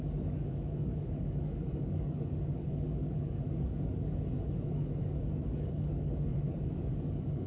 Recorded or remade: remade